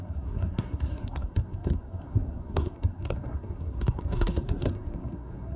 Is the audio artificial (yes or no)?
yes